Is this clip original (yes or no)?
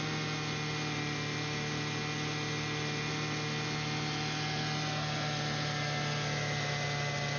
yes